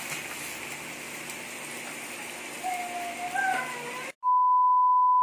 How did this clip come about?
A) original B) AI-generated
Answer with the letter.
A